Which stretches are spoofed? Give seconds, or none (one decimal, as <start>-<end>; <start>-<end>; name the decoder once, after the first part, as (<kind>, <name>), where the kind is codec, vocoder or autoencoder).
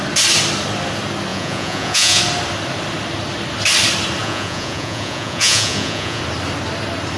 1.3-2.2 (vocoder, Vocos); 4.2-6.2